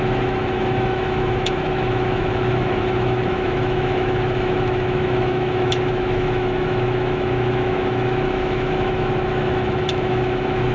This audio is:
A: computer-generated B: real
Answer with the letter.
A